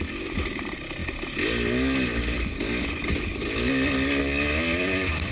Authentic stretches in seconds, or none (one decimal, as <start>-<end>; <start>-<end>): 0.0-5.3